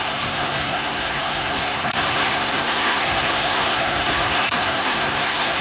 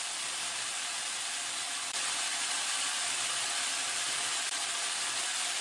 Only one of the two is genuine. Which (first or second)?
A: second